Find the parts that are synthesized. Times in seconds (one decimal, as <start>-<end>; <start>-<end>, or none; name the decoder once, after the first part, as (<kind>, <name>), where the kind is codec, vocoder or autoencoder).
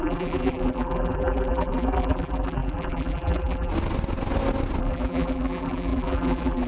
0.0-3.7 (vocoder, BigVGAN v2); 4.8-6.7